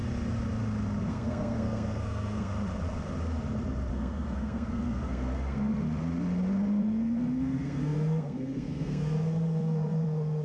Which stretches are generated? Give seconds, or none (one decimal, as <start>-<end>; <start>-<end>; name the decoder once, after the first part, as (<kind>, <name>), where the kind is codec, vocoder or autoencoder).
1.1-2.5 (codec, SNAC); 3.9-5.7; 6.8-10.4